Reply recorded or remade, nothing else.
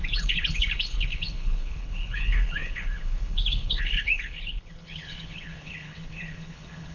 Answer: remade